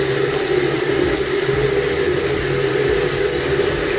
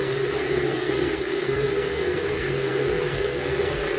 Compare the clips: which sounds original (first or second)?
first